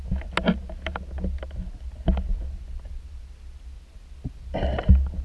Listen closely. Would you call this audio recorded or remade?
recorded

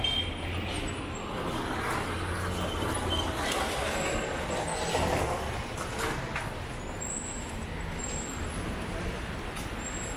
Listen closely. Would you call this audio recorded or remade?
recorded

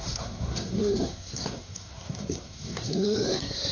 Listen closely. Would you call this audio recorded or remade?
remade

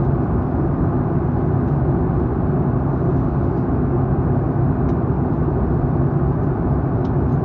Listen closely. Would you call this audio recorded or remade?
recorded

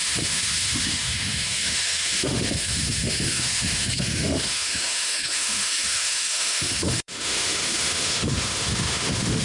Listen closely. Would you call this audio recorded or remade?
remade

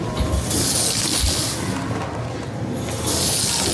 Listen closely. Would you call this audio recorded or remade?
recorded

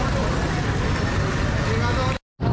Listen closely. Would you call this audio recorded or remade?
recorded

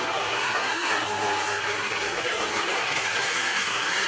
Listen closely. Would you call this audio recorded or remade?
remade